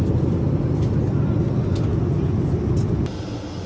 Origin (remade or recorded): recorded